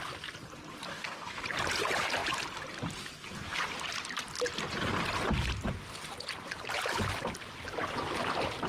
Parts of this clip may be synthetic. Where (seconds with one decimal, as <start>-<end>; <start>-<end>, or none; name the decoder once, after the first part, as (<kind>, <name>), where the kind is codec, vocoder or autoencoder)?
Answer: 0.9-1.4 (codec, DAC)